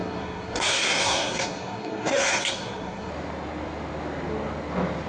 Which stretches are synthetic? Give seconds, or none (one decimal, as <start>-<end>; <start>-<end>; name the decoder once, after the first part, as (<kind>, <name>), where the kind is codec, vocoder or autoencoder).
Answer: 0.0-3.1 (codec, SNAC)